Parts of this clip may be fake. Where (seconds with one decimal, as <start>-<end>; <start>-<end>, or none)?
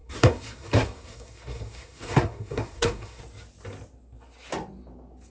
0.0-3.2